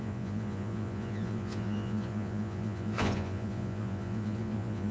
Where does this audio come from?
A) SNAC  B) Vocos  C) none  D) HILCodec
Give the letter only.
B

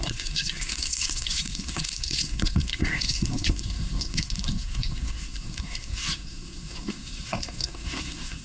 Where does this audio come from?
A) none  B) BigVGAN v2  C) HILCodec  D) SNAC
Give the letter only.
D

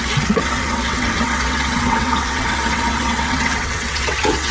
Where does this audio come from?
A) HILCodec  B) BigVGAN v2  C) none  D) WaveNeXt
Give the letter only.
D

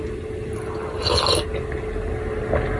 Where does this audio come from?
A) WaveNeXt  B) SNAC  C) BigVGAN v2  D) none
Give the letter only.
D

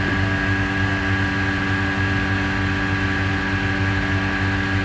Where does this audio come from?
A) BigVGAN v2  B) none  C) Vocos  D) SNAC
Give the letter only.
B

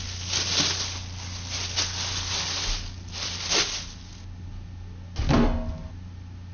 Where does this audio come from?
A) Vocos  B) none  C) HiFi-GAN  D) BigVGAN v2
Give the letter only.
B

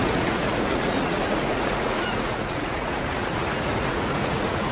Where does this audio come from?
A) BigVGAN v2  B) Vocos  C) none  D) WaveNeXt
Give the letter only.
B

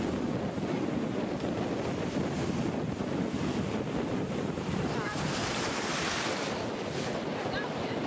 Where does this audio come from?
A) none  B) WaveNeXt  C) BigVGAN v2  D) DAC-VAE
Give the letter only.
A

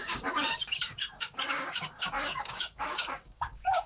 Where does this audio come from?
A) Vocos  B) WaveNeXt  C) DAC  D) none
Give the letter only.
C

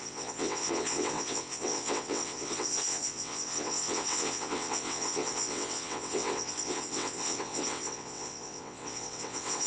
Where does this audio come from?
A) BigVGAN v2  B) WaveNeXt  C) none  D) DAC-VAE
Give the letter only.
B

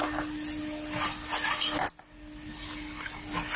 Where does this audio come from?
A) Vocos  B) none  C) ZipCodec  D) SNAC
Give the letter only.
B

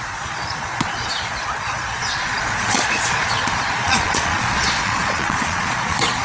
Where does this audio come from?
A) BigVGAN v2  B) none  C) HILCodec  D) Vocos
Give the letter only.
D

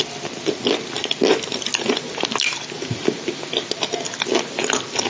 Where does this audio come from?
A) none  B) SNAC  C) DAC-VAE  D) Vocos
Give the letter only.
A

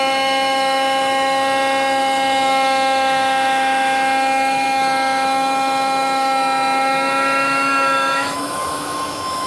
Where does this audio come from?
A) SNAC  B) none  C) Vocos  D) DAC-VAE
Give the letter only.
D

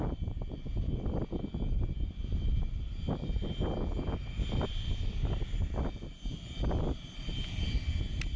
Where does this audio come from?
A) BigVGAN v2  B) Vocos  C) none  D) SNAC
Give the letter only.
C